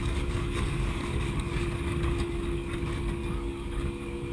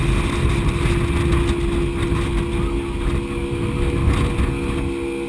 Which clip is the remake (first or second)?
first